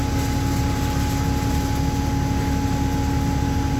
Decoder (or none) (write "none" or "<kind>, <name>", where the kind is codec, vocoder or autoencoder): none